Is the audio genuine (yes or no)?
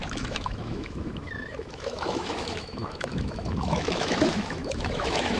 no